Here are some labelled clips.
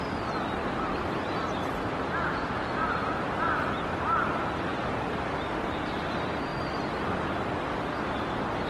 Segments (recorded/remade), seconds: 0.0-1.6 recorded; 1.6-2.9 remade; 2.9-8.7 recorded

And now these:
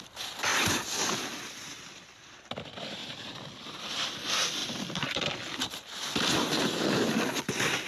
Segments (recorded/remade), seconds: 0.0-0.5 recorded; 0.5-1.6 remade; 1.6-3.0 recorded; 3.0-4.1 remade; 4.1-4.6 recorded; 4.6-5.6 remade; 5.6-7.9 recorded

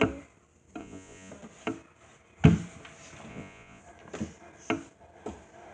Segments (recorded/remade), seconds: 0.0-0.8 recorded; 0.8-1.3 remade; 1.3-3.3 recorded; 3.3-3.8 remade; 3.8-5.7 recorded

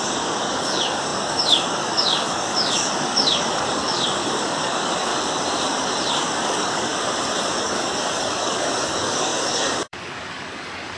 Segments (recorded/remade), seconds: 0.0-5.1 remade; 5.1-6.1 recorded; 6.1-6.9 remade; 6.9-7.5 recorded; 7.5-11.0 remade

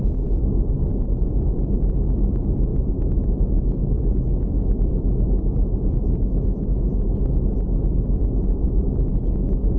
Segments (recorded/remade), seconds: 0.0-0.9 recorded; 0.9-1.7 remade; 1.7-2.7 recorded; 2.7-6.6 remade; 6.6-9.8 recorded

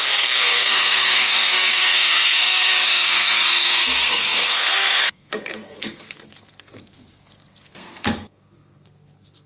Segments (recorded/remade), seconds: 0.0-9.5 remade

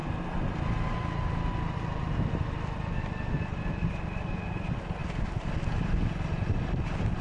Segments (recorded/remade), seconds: 0.0-7.2 recorded